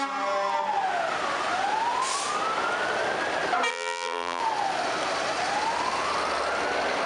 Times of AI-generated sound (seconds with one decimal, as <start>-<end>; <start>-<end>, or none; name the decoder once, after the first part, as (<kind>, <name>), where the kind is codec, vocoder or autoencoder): 3.7-4.4 (vocoder, BigVGAN v2)

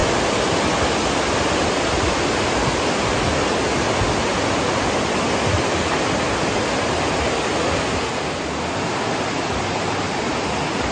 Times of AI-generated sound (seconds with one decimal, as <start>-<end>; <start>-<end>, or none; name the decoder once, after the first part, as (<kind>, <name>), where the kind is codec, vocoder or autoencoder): none

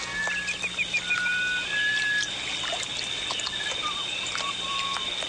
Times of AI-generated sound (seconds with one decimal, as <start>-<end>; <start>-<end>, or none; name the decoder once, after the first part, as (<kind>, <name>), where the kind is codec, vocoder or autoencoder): none

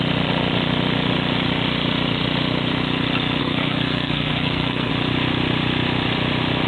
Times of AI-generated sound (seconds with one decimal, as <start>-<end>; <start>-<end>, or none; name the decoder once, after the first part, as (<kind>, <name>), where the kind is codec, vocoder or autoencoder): 3.4-4.9 (codec, SNAC)

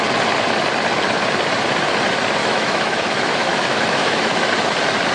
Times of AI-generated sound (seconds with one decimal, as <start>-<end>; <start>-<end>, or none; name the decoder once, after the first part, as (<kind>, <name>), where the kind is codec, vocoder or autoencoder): 2.4-4.5 (autoencoder, DAC-VAE)

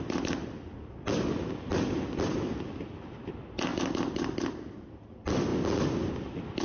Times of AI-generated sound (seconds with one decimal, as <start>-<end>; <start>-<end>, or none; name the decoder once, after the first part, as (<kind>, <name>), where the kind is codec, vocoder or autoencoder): none